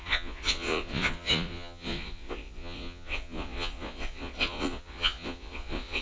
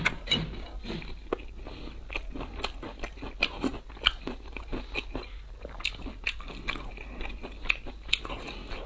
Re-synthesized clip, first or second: first